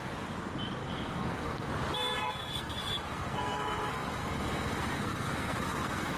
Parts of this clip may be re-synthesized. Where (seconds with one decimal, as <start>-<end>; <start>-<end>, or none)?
0.8-1.7; 2.2-6.2